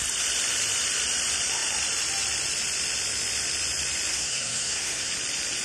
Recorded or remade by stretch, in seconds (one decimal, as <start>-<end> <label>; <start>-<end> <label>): 0.0-4.1 recorded; 4.1-5.1 remade; 5.1-5.6 recorded